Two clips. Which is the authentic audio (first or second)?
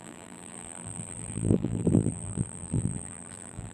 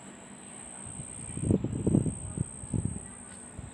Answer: second